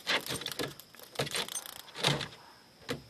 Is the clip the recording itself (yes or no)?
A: yes